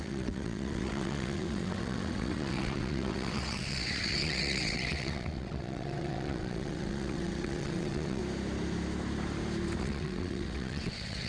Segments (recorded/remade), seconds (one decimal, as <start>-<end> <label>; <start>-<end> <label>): 0.0-8.2 remade; 8.2-9.8 recorded; 9.8-11.3 remade